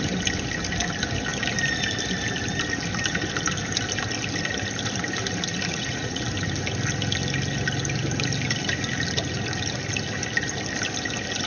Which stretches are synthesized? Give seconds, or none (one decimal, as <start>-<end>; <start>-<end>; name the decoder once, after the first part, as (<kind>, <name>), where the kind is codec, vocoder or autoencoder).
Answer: 5.7-6.2 (vocoder, Vocos)